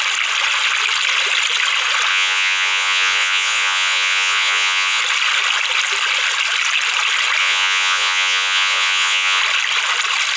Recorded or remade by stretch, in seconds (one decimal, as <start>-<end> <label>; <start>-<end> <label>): 0.0-2.1 recorded; 2.1-5.0 remade; 5.0-7.4 recorded; 7.4-9.4 remade; 9.4-10.4 recorded